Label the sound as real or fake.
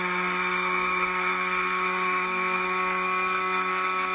fake